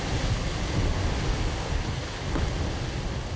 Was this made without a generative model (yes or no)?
yes